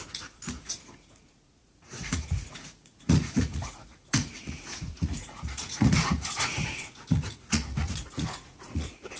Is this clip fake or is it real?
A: fake